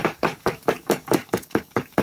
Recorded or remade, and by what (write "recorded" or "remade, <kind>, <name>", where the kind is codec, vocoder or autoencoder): remade, codec, DAC